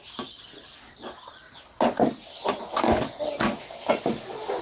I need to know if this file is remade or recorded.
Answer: recorded